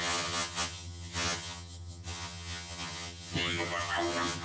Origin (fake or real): fake